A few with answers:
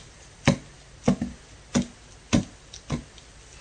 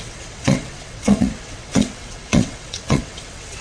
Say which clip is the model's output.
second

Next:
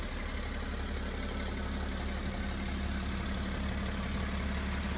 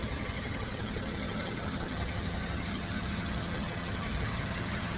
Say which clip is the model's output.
second